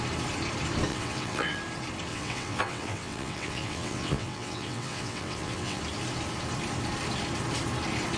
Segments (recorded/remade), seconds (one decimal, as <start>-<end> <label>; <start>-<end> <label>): 0.0-0.9 recorded; 0.9-1.6 remade; 1.6-2.1 recorded; 2.1-5.8 remade; 5.8-8.2 recorded